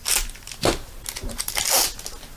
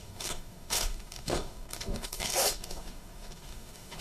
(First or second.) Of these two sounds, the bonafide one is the first